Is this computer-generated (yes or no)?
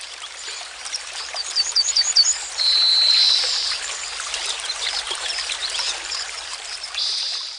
yes